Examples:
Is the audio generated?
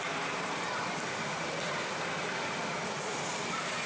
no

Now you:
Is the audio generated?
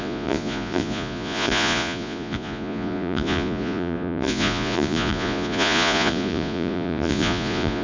yes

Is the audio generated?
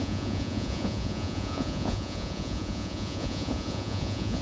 yes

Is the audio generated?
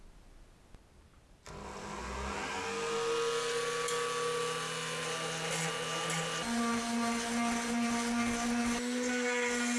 no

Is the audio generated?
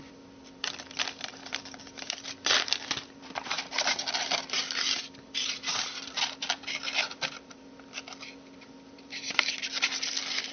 yes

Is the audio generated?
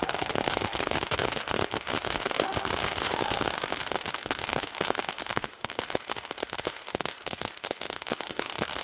yes